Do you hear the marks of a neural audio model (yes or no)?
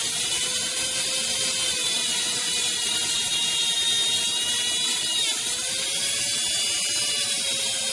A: no